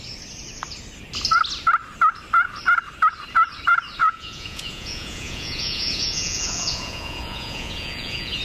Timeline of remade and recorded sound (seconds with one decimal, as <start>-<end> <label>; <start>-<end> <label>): 0.0-4.0 recorded; 4.0-8.4 remade